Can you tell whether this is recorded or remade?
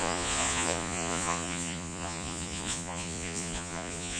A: remade